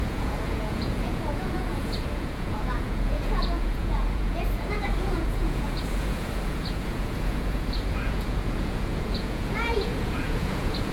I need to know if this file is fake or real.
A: fake